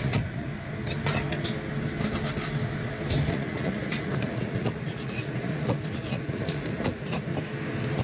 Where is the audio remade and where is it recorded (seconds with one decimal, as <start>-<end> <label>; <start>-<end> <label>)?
0.0-0.5 remade; 0.5-3.3 recorded; 3.3-7.3 remade; 7.3-8.0 recorded